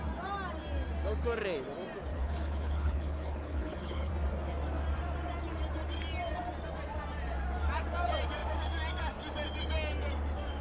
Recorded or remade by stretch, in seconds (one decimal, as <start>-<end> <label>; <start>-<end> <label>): 0.0-2.1 recorded; 2.1-4.1 remade; 4.1-10.6 recorded